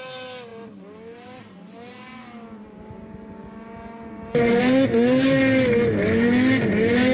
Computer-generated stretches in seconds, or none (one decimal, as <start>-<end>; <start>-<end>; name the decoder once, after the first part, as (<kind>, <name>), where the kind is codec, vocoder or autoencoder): none